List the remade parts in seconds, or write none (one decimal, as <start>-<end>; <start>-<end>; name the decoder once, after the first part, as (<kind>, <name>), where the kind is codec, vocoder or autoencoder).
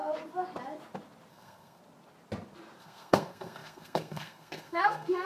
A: 1.3-1.8 (codec, SNAC); 2.8-5.3